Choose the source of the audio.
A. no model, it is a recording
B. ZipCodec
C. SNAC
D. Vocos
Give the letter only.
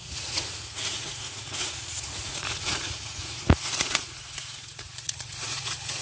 D